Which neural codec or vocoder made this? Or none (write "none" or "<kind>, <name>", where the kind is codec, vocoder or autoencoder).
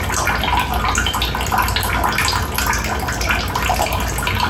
none